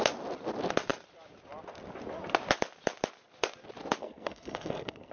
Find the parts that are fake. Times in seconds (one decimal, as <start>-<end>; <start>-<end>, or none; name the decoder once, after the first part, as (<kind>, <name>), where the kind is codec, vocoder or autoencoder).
4.0-5.1 (codec, SNAC)